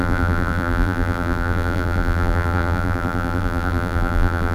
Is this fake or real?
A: fake